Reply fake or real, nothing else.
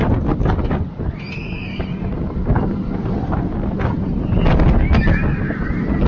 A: real